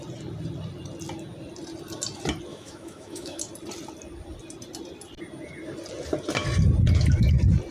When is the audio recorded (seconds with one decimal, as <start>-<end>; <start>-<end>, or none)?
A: 0.0-2.5; 3.4-7.7